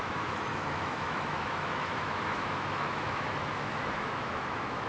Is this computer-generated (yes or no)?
yes